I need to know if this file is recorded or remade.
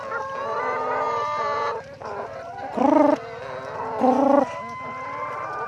recorded